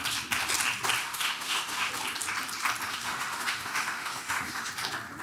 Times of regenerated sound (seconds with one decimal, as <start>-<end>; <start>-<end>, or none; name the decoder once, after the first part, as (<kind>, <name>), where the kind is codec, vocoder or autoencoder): 1.0-1.9 (autoencoder, DAC-VAE); 2.9-4.7